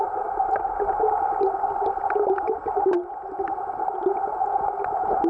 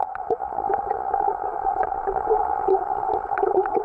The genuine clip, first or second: first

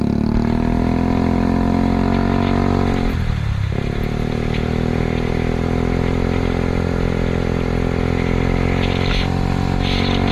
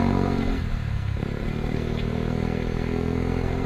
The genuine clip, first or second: first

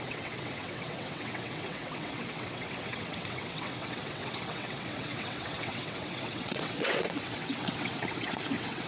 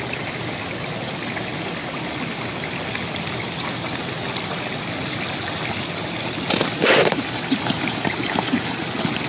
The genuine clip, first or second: second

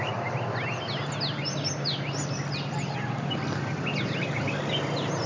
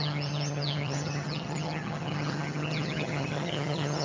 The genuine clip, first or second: first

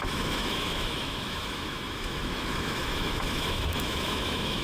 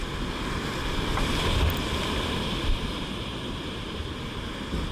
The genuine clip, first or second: second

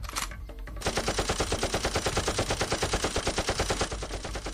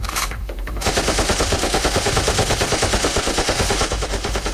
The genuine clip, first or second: first